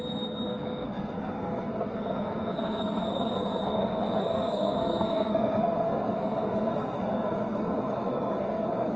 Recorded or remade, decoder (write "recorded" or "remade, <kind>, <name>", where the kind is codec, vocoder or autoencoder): remade, codec, SNAC